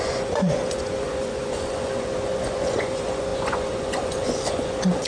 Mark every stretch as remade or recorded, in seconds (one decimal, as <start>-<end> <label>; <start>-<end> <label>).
0.0-5.1 remade